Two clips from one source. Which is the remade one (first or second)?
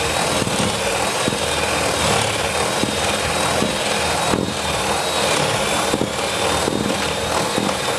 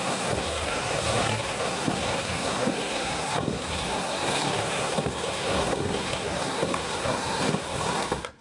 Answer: second